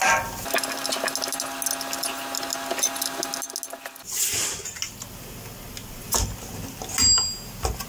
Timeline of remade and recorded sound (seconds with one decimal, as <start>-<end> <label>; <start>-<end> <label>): 0.0-7.9 recorded